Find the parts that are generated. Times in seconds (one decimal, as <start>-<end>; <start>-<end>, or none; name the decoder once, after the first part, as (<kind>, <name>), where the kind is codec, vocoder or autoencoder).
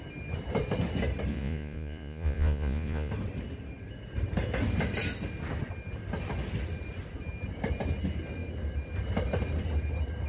1.3-3.1 (vocoder, Vocos)